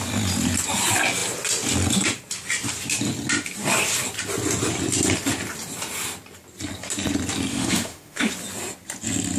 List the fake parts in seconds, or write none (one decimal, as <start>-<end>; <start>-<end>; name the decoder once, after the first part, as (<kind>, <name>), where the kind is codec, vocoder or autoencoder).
7.5-8.3 (autoencoder, DAC-VAE)